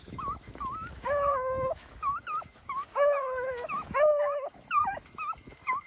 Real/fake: fake